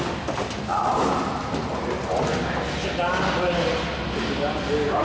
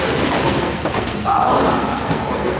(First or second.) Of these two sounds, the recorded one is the first